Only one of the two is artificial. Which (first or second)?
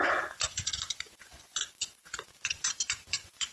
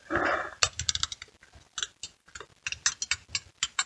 first